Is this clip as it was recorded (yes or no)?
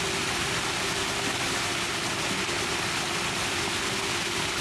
yes